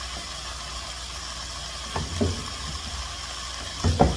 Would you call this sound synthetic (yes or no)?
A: no